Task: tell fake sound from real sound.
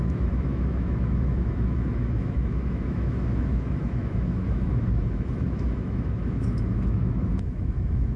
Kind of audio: fake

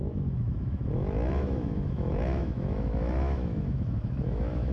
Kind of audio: fake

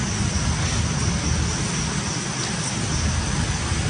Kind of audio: real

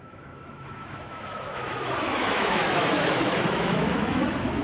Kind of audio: fake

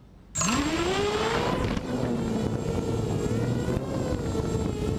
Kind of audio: real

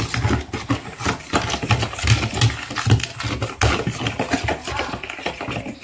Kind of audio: real